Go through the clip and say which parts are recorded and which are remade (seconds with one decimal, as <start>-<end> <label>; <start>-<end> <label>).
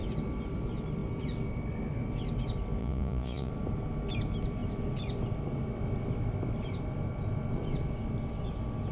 0.0-2.8 recorded; 2.8-3.5 remade; 3.5-8.9 recorded